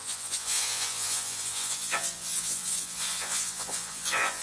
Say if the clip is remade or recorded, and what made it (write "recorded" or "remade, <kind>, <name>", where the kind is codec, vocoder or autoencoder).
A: remade, vocoder, Vocos